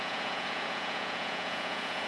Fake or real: fake